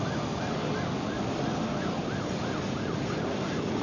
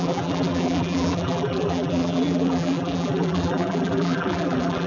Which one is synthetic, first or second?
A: second